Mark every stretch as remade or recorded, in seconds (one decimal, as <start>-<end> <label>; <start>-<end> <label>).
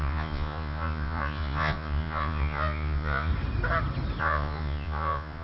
0.0-3.3 remade; 3.3-4.2 recorded; 4.2-5.4 remade